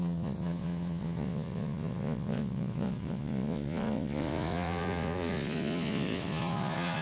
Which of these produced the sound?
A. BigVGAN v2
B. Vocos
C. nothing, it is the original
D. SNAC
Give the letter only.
B